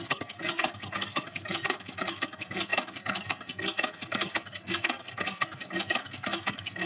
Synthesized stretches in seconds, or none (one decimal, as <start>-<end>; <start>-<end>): 0.0-6.9